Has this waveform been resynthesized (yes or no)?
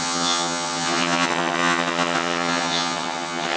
yes